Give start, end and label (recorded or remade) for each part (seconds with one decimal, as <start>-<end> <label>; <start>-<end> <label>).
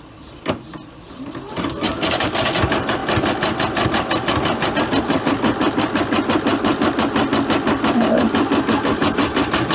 0.0-9.7 recorded